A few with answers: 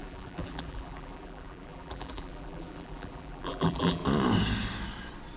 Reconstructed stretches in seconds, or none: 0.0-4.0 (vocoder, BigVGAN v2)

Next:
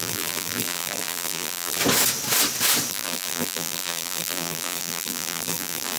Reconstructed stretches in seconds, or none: 0.0-1.8 (vocoder, BigVGAN v2); 2.9-6.0

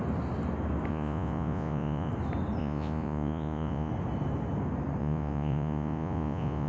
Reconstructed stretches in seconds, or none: 0.9-2.1 (vocoder, Vocos); 2.6-3.9; 5.0-6.7

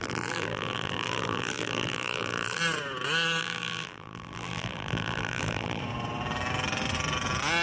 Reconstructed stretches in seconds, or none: 0.0-2.6 (vocoder, BigVGAN v2); 3.4-5.8

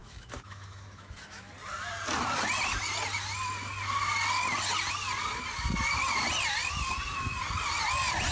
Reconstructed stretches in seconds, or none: 0.0-1.5 (autoencoder, DAC-VAE)

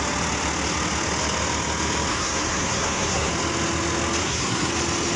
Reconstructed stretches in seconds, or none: 2.1-3.3 (codec, SNAC); 4.2-4.7

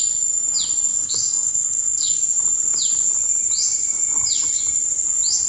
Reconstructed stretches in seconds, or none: 0.9-2.2 (codec, SNAC)